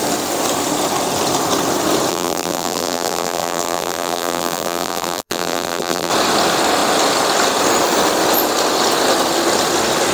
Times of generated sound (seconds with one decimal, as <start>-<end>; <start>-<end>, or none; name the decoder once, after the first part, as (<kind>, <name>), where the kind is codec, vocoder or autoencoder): 2.1-6.1 (vocoder, BigVGAN v2)